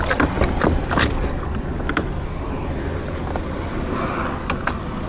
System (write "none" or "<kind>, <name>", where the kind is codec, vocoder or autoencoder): none